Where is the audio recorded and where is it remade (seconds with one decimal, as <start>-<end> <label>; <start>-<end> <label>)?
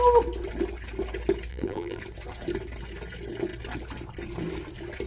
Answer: 0.0-1.5 recorded; 1.5-2.0 remade; 2.0-5.1 recorded